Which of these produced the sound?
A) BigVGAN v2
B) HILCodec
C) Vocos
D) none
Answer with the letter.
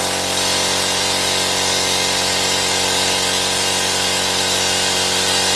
D